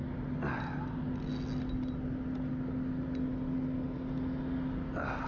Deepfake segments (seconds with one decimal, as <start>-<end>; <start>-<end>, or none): none